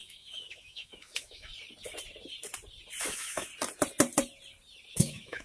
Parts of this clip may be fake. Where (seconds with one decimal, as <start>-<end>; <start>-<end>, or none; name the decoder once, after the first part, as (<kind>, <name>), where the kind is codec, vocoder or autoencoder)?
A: 0.0-1.5 (autoencoder, DAC-VAE); 3.0-3.5; 4.9-5.4